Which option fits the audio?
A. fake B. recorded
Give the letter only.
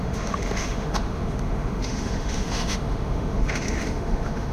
A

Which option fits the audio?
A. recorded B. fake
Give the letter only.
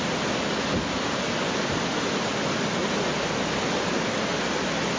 A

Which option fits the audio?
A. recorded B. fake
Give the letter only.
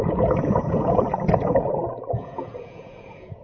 B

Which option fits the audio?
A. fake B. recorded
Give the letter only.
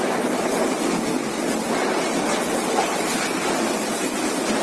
B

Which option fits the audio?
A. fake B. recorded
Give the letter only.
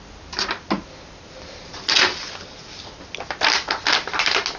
B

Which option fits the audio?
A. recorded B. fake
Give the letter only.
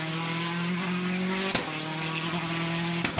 A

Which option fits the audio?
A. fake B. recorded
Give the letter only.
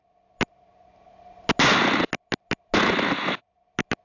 B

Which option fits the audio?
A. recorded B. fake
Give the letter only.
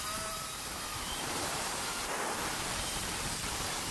B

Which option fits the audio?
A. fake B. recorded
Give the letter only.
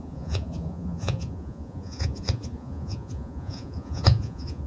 A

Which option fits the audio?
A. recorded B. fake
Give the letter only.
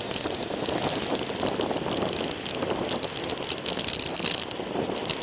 A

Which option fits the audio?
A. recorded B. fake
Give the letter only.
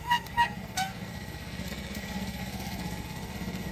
B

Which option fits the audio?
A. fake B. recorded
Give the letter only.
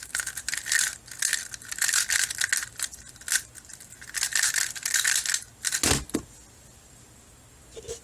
B